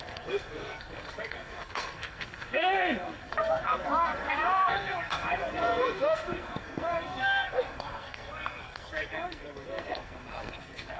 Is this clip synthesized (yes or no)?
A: yes